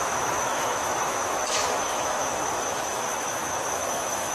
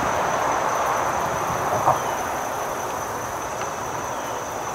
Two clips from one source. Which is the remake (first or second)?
first